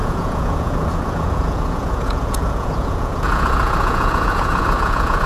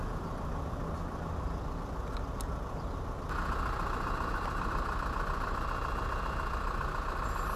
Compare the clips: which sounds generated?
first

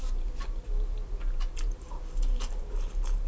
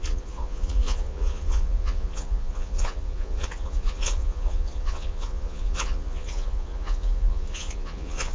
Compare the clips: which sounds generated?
second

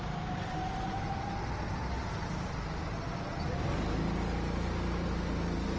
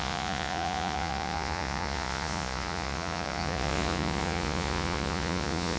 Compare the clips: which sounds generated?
second